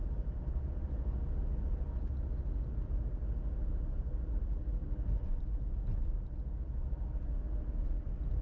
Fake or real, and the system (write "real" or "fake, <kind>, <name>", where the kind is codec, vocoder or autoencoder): real